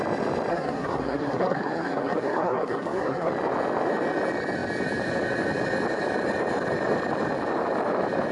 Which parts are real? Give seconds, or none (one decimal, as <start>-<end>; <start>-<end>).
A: 0.0-0.5; 3.3-8.3